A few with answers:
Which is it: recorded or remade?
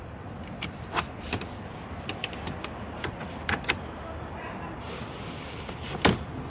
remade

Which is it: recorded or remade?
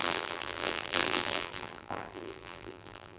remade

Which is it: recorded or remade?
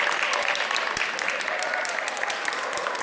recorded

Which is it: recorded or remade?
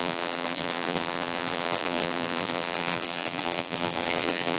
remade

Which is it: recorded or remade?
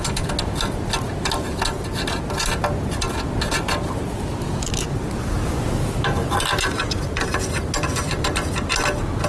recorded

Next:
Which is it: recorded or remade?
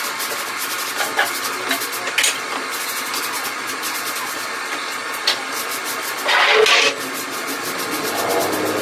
recorded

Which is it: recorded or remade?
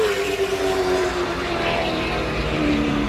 remade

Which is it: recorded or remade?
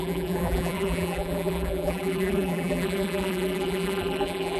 remade